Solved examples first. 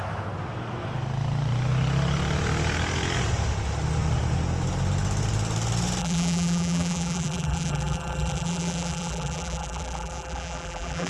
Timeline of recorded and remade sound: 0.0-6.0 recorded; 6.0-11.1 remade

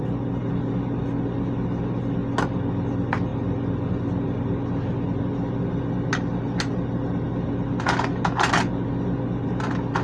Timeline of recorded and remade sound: 0.0-10.0 recorded

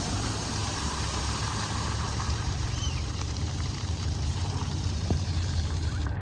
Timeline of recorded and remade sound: 0.0-6.2 remade

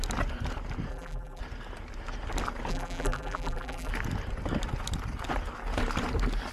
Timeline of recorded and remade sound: 0.0-0.9 recorded; 0.9-1.4 remade; 1.4-2.7 recorded; 2.7-3.9 remade; 3.9-6.5 recorded

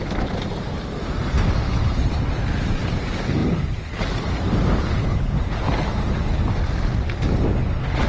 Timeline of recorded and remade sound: 0.0-3.4 recorded; 3.4-5.5 remade; 5.5-8.1 recorded

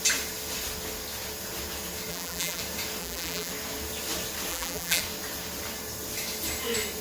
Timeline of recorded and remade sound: 0.0-2.1 recorded; 2.1-2.6 remade; 2.6-3.0 recorded; 3.0-3.5 remade; 3.5-4.5 recorded; 4.5-5.0 remade; 5.0-7.0 recorded